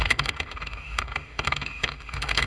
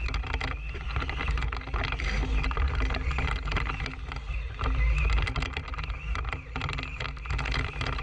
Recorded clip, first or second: second